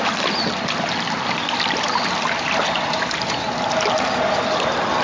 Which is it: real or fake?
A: real